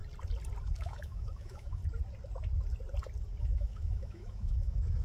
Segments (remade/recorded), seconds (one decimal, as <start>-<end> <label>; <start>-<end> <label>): 0.0-0.6 recorded; 0.6-1.8 remade; 1.8-3.4 recorded; 3.4-5.0 remade